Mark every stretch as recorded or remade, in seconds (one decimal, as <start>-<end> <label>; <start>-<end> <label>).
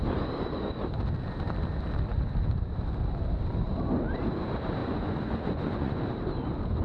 0.0-4.8 recorded; 4.8-6.0 remade; 6.0-6.8 recorded